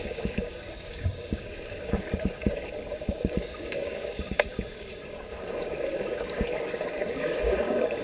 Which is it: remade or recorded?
remade